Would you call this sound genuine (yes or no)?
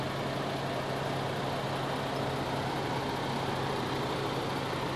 yes